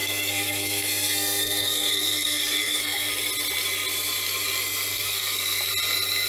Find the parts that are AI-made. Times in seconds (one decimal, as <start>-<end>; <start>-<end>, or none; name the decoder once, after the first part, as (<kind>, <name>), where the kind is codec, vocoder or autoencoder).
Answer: 0.0-3.1 (codec, SNAC); 4.9-5.7